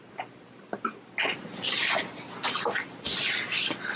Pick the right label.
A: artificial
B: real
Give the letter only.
B